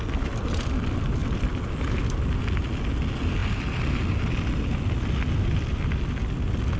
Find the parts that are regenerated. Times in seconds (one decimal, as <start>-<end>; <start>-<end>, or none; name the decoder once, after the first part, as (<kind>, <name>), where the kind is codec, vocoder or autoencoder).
none